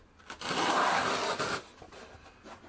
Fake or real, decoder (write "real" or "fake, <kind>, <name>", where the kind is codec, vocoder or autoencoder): real